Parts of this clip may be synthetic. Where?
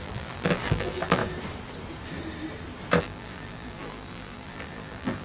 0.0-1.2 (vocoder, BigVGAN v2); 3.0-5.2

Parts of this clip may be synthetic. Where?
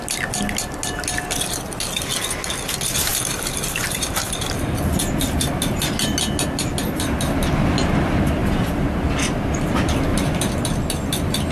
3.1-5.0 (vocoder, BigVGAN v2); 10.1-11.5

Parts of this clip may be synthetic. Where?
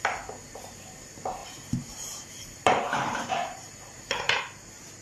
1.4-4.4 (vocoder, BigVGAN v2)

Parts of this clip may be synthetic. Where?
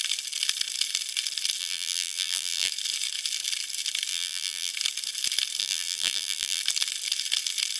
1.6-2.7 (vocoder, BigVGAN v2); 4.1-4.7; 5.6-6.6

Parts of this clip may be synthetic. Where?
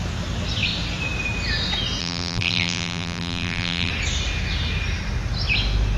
2.0-3.9 (vocoder, BigVGAN v2)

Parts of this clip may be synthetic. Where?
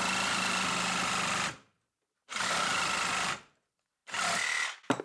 2.7-3.3 (vocoder, BigVGAN v2)